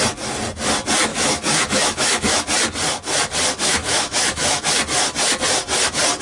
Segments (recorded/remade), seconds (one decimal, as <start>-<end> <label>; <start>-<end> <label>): 0.0-1.1 recorded; 1.1-2.4 remade; 2.4-3.8 recorded; 3.8-4.6 remade; 4.6-6.2 recorded